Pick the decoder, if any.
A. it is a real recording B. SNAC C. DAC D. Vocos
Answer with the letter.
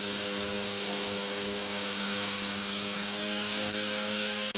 C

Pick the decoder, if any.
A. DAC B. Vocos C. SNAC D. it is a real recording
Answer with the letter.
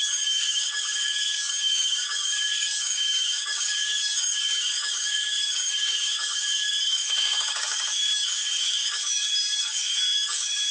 A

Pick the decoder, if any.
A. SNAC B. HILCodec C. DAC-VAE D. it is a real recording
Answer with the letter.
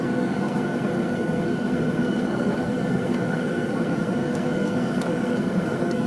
A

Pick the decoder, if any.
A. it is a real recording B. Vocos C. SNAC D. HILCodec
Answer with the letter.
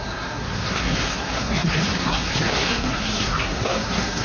C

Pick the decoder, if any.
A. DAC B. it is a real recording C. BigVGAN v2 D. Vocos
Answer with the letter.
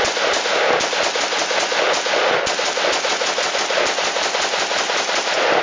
C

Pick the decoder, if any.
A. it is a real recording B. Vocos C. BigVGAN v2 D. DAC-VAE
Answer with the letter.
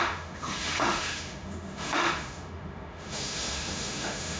D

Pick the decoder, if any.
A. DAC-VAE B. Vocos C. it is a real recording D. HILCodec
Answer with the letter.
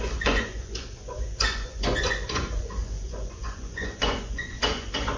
B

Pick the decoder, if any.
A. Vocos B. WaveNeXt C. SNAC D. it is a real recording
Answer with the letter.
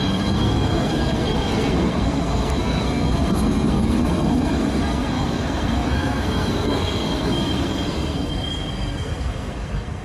C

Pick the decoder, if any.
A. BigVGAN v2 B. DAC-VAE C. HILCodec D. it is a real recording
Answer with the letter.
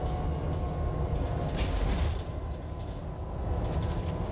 D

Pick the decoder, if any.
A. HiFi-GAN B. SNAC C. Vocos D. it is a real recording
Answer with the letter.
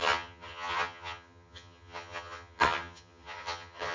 A